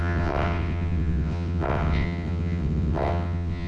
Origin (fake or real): fake